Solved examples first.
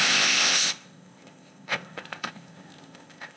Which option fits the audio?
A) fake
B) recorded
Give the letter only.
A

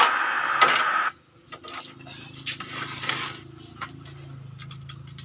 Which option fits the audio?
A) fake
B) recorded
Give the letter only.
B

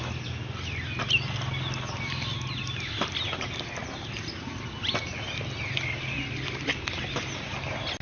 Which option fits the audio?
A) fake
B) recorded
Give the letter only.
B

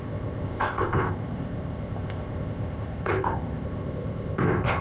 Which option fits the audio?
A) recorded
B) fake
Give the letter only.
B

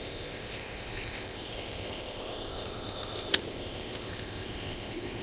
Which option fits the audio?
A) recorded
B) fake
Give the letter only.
B